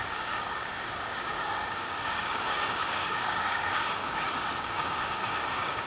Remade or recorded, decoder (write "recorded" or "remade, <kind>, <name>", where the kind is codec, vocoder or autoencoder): remade, codec, DAC